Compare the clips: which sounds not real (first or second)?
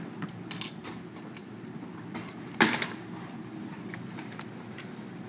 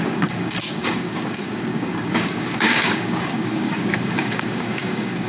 second